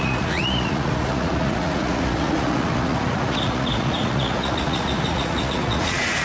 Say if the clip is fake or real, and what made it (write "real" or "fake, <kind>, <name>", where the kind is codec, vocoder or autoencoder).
fake, vocoder, Vocos